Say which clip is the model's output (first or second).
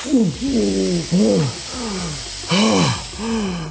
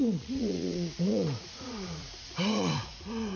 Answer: second